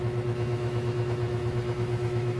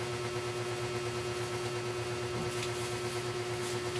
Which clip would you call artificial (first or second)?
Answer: first